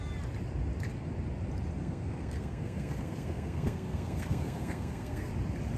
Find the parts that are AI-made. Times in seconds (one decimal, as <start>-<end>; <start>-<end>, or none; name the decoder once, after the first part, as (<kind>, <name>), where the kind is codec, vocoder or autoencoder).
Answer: 1.8-5.3 (codec, SNAC)